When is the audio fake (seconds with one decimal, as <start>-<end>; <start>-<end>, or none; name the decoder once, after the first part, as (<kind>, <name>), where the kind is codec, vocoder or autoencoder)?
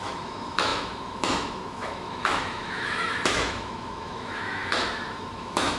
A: 0.0-5.8 (autoencoder, DAC-VAE)